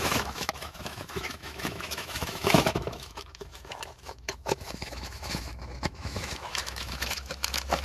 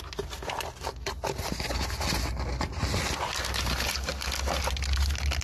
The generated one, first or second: first